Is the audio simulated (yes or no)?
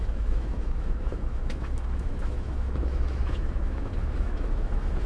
yes